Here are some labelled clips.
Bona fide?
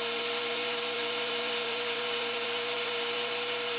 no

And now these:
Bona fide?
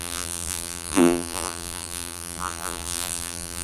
no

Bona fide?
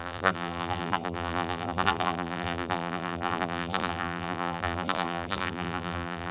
no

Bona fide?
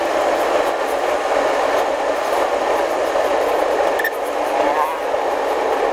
yes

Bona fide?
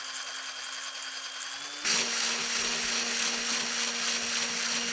yes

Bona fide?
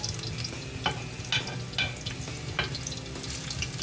yes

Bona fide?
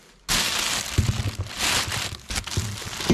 yes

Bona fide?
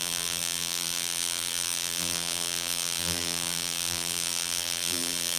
no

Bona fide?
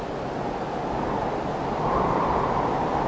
yes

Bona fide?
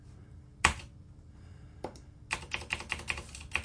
yes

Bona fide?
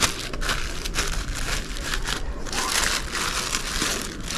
yes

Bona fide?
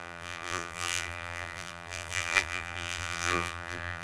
no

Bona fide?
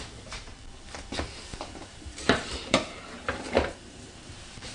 no